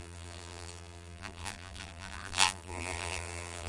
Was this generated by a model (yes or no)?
yes